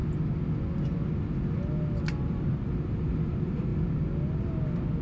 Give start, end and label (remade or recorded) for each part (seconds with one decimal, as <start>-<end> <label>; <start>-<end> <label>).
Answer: 0.0-3.0 recorded; 3.0-3.7 remade; 3.7-5.0 recorded